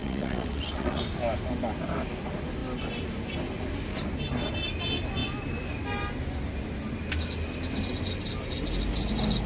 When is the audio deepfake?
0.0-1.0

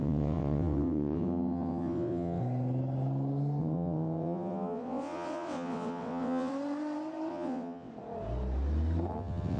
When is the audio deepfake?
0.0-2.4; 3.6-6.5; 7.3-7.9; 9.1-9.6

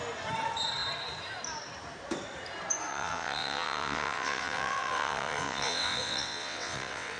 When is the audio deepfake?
2.9-7.2